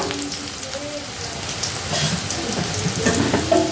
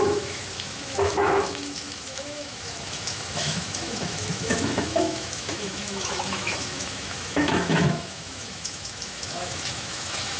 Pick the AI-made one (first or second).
second